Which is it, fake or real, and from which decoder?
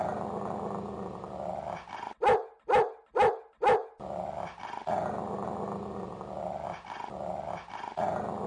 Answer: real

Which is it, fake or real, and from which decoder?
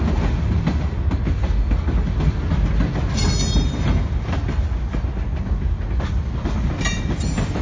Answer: real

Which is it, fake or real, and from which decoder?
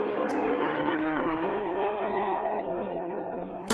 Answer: fake, codec, SNAC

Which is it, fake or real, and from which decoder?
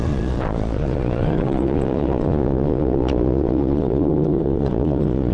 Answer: fake, vocoder, Vocos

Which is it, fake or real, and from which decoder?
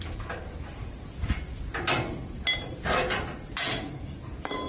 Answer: real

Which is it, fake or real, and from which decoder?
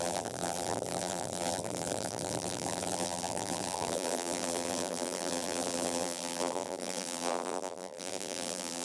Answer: fake, vocoder, BigVGAN v2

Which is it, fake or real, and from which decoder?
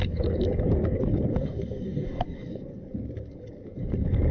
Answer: fake, codec, DAC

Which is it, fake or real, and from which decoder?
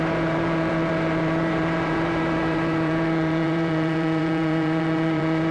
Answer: fake, vocoder, BigVGAN v2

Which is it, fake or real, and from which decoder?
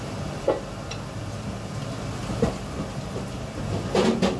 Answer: real